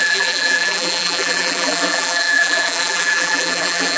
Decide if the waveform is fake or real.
fake